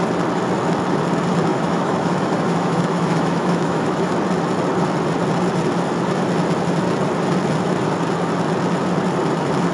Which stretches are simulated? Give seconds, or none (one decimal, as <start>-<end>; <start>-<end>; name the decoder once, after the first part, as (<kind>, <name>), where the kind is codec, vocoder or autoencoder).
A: 1.5-4.1 (autoencoder, DAC-VAE)